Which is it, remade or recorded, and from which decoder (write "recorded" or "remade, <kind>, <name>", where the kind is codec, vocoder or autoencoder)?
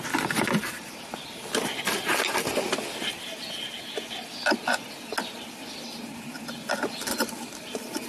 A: recorded